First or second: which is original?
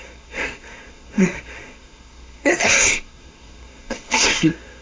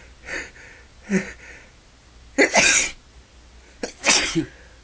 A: second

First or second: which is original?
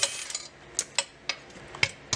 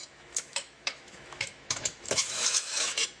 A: first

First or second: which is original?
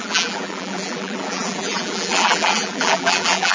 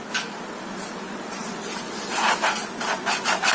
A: second